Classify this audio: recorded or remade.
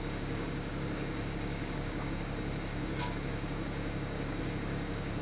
remade